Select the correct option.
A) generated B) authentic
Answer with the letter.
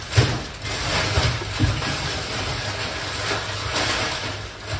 B